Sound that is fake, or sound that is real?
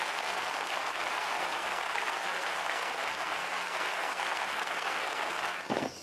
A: fake